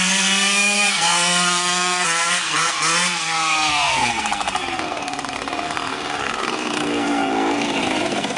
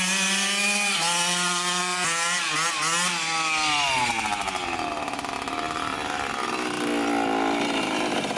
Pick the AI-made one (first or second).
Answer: first